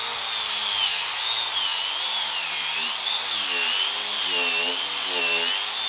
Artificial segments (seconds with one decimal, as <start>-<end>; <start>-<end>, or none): 1.7-5.2